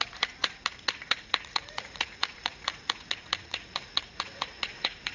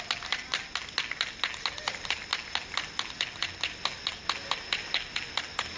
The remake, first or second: first